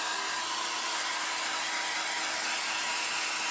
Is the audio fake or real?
real